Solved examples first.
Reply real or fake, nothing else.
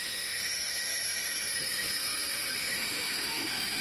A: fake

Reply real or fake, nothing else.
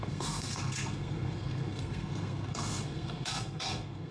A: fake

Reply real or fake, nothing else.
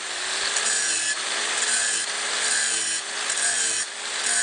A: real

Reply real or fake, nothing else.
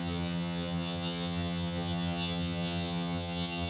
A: fake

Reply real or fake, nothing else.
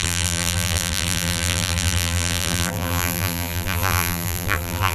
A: fake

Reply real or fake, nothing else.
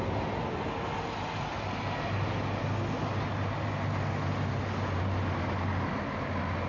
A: real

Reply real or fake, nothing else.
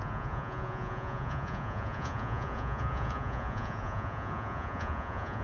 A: fake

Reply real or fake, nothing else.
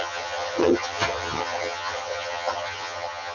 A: fake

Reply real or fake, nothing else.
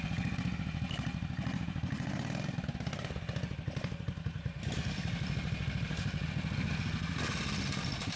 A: fake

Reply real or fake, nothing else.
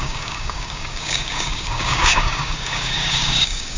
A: fake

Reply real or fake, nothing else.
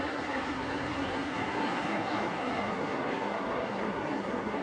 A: fake